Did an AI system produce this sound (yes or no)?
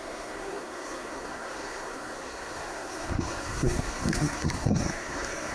yes